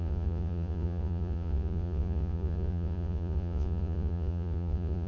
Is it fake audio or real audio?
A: fake